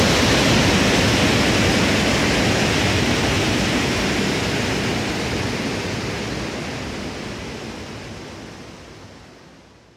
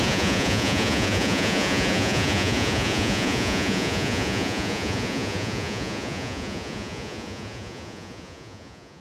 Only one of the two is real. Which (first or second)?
first